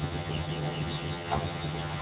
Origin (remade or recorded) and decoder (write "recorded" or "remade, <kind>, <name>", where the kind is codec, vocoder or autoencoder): remade, vocoder, HiFi-GAN